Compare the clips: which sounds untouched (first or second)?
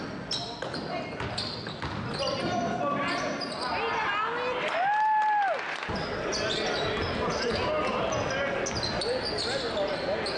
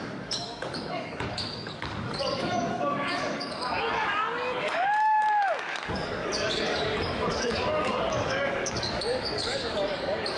first